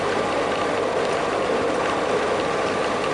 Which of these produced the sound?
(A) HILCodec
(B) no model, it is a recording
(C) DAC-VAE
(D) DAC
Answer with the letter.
B